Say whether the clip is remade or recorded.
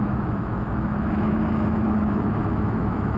remade